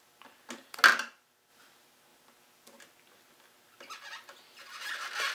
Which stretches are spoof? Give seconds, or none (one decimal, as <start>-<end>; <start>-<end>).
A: none